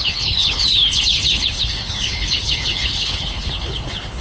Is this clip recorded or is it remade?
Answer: remade